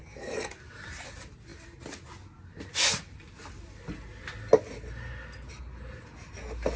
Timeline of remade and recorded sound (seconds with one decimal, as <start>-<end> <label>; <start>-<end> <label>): 0.0-6.8 recorded

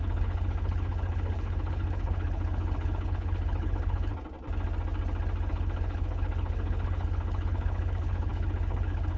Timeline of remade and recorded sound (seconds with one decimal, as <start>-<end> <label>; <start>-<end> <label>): 0.0-4.1 remade; 4.1-5.5 recorded; 5.5-9.2 remade

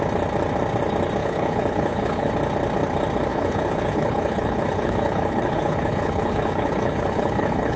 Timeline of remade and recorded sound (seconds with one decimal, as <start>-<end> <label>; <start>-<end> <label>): 0.0-1.2 recorded; 1.2-2.3 remade; 2.3-3.3 recorded; 3.3-7.8 remade

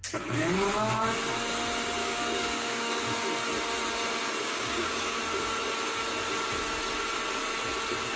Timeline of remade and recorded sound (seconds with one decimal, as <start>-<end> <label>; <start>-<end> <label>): 0.0-2.0 recorded; 2.0-3.0 remade; 3.0-4.4 recorded; 4.4-5.2 remade; 5.2-8.2 recorded

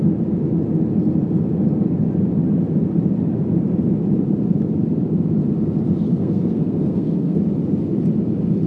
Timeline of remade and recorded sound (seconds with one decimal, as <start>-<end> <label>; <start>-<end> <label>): 0.0-6.1 recorded; 6.1-7.4 remade; 7.4-8.7 recorded

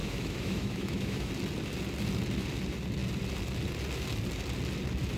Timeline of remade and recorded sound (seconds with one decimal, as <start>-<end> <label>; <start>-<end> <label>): 0.0-1.3 remade; 1.3-5.2 recorded